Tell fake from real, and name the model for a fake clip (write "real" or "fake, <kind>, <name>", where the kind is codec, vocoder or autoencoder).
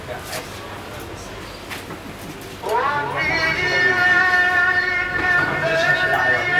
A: real